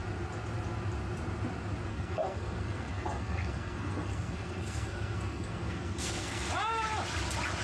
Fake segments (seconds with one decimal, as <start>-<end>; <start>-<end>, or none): 1.9-6.5